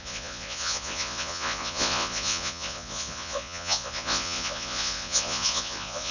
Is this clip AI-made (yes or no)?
yes